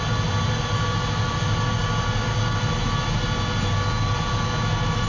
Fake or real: real